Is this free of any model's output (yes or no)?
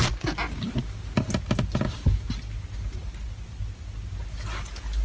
yes